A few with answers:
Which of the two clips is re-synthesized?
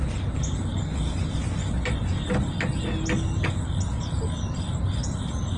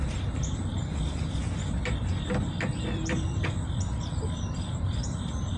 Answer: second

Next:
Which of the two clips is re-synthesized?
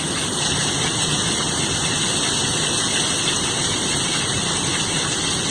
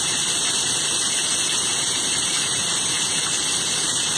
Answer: second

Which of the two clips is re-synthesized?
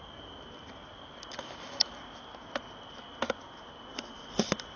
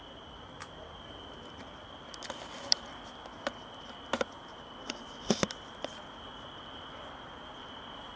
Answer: second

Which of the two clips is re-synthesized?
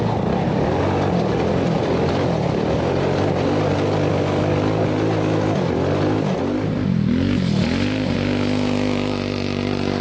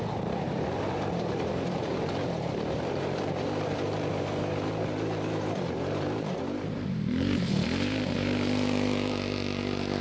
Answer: second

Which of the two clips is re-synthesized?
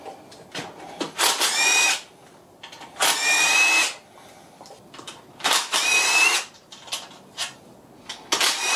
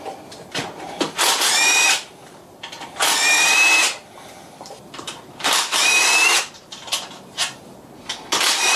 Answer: second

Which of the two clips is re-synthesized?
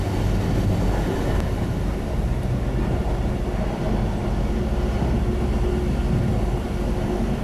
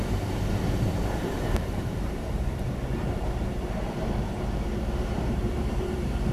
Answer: second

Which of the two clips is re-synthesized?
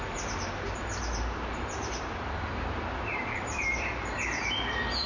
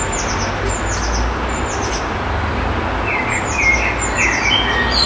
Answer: first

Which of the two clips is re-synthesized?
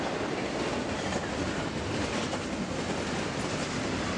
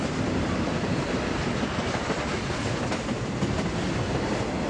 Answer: second